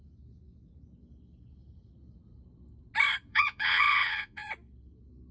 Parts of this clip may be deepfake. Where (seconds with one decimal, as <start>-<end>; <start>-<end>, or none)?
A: 3.3-4.5